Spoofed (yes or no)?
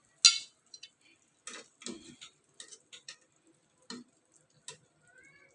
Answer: no